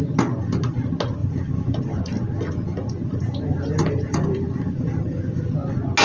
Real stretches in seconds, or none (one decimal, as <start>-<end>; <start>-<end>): 0.0-1.2; 2.0-2.8; 5.5-6.0